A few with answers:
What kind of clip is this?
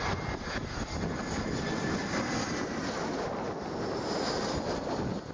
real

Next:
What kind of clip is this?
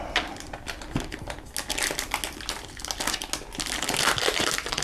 real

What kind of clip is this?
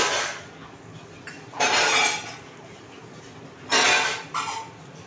real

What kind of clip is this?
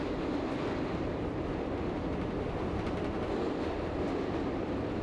real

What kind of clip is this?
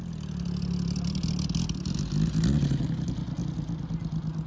real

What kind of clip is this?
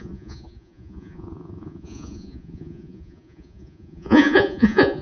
fake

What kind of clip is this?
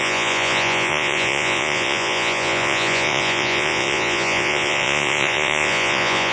fake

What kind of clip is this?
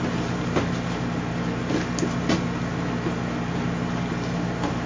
real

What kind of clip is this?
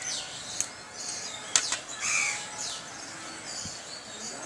real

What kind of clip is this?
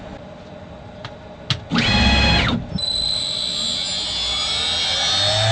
real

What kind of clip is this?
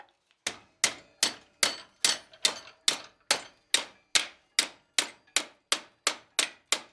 real